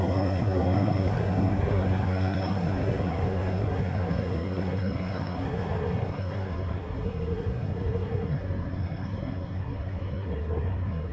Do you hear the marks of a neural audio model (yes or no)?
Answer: yes